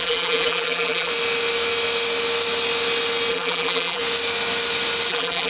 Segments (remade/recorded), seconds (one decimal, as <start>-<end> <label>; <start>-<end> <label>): 0.0-1.1 remade; 1.1-3.3 recorded; 3.3-4.0 remade; 4.0-5.1 recorded; 5.1-5.5 remade